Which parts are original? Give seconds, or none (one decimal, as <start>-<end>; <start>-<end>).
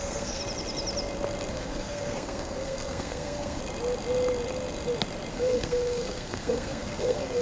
0.4-1.5; 3.6-5.3